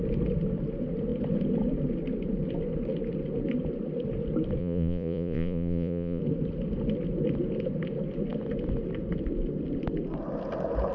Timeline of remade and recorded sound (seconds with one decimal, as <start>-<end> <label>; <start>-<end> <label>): 0.0-4.6 recorded; 4.6-6.2 remade; 6.2-10.9 recorded